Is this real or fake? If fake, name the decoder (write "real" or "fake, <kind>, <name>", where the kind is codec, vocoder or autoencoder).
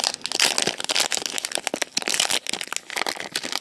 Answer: real